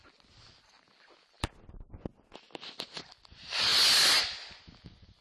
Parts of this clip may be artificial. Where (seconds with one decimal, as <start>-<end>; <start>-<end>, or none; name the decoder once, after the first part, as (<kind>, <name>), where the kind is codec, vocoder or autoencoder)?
none